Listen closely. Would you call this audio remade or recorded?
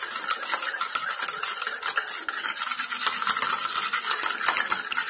recorded